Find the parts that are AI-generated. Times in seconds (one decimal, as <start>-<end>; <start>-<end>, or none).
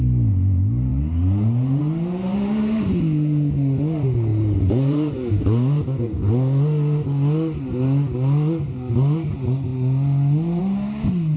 4.3-6.3